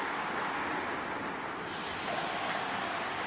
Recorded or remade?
recorded